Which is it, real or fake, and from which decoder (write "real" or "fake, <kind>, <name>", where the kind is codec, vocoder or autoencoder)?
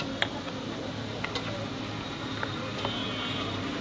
real